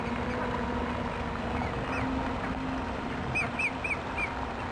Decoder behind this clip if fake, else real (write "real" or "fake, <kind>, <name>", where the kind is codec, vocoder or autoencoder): fake, vocoder, BigVGAN v2